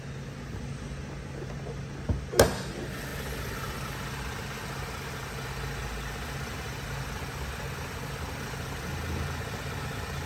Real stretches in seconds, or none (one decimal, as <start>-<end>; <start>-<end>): 0.0-10.3